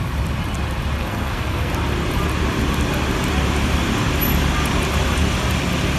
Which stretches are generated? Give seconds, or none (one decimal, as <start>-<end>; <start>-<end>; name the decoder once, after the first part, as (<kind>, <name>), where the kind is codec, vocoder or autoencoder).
1.0-1.7 (codec, SNAC)